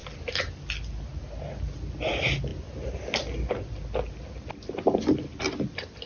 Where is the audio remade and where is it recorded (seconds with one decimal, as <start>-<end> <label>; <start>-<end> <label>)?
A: 0.0-6.1 recorded